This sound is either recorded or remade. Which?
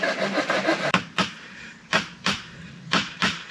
remade